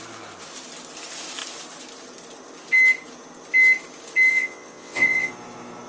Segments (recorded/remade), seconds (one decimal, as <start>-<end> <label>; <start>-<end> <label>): 0.0-4.3 recorded; 4.3-5.3 remade; 5.3-5.9 recorded